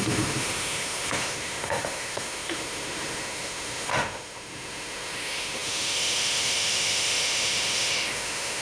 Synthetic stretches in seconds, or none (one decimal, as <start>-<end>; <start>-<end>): 0.0-8.6